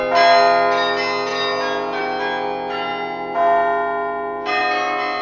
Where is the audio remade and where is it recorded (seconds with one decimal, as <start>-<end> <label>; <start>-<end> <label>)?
0.0-5.2 recorded

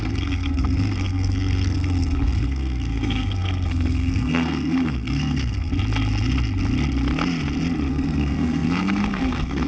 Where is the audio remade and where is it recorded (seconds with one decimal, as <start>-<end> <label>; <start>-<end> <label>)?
0.0-5.7 remade; 5.7-7.9 recorded; 7.9-9.7 remade

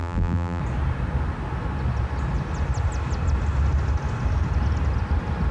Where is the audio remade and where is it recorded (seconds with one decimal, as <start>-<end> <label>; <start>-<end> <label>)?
0.0-0.6 remade; 0.6-5.5 recorded

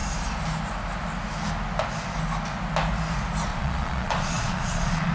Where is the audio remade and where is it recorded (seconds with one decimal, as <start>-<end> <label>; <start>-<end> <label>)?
0.0-3.5 recorded; 3.5-5.1 remade

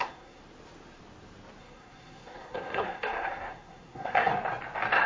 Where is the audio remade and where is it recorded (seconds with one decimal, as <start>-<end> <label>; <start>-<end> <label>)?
0.0-0.4 remade; 0.4-1.6 recorded; 1.6-4.3 remade; 4.3-5.1 recorded

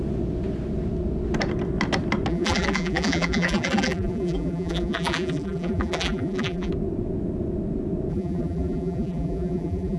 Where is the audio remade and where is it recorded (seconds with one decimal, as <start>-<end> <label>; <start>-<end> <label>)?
0.0-2.3 recorded; 2.3-6.7 remade; 6.7-8.1 recorded; 8.1-10.0 remade

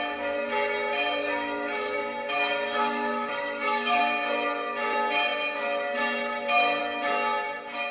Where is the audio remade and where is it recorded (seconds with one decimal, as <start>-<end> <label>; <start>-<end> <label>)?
0.0-1.2 recorded; 1.2-2.0 remade; 2.0-2.5 recorded; 2.5-4.0 remade; 4.0-7.9 recorded

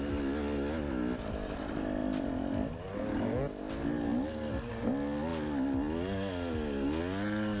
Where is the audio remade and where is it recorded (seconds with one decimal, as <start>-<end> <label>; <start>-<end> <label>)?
0.0-7.6 recorded